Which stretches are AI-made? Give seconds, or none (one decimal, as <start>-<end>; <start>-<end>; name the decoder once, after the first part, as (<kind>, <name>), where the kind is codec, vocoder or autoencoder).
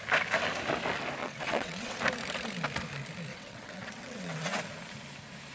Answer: 1.2-2.0 (vocoder, WaveNeXt); 3.3-4.6